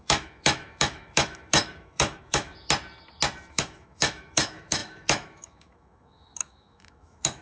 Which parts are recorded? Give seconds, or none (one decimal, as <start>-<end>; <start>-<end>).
2.5-3.5